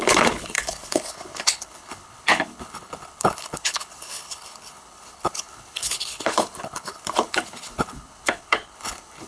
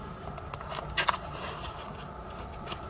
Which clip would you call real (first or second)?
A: second